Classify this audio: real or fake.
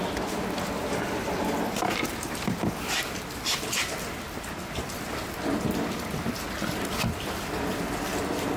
real